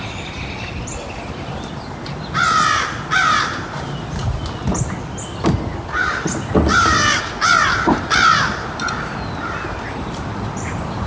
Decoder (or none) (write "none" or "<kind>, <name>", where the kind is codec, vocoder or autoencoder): none